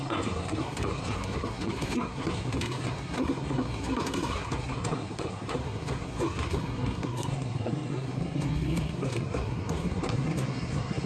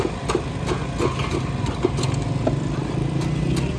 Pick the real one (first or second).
second